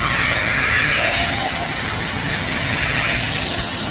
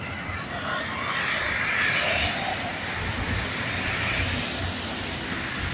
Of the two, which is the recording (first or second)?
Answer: second